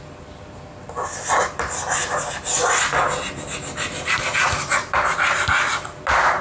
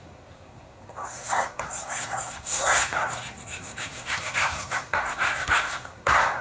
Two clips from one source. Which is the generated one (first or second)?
second